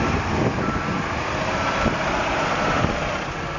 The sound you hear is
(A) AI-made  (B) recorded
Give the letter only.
B